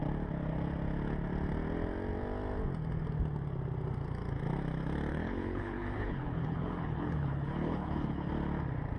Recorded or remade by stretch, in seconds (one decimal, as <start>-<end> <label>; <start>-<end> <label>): 0.0-5.1 recorded; 5.1-8.3 remade; 8.3-9.0 recorded